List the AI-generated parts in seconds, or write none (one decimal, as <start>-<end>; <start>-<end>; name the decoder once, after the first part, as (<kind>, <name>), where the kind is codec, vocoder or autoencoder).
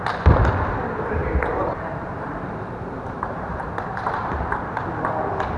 1.2-4.6 (vocoder, BigVGAN v2)